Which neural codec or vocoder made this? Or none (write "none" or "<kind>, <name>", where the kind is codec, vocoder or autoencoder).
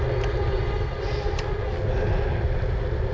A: none